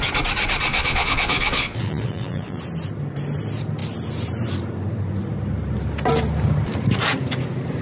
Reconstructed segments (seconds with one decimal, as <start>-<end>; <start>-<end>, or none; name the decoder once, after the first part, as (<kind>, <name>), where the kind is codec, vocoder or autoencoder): 0.7-2.6 (vocoder, Vocos)

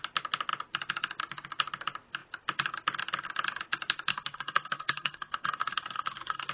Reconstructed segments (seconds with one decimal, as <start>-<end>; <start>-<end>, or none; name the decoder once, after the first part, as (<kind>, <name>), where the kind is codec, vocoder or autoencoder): 4.1-6.5 (codec, SNAC)

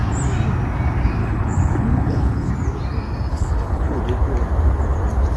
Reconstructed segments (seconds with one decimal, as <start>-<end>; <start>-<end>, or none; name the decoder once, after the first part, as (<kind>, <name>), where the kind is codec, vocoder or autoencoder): 1.2-2.5 (codec, HILCodec); 3.3-4.0

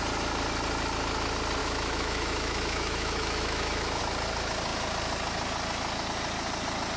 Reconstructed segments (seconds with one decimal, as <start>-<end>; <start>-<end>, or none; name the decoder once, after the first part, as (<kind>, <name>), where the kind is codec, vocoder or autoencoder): 1.6-4.0 (autoencoder, DAC-VAE)